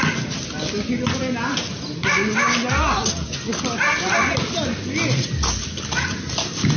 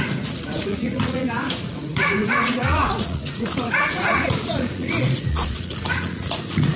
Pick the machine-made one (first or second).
second